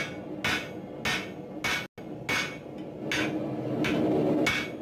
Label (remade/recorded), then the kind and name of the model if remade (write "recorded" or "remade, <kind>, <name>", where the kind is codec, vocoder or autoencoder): recorded